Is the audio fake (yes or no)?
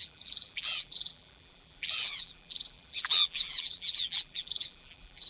yes